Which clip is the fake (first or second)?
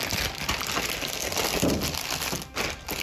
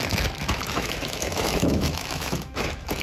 second